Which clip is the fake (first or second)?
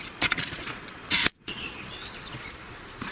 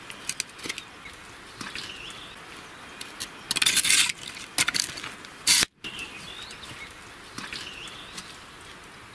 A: first